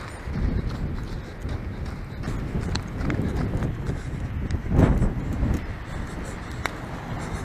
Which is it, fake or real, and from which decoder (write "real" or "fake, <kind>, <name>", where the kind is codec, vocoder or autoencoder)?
real